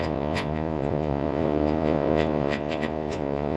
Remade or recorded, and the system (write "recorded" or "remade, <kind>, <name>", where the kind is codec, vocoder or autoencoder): remade, vocoder, Vocos